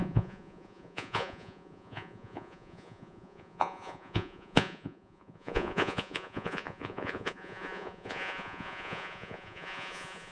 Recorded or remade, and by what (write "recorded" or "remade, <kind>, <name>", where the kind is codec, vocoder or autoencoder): remade, vocoder, Vocos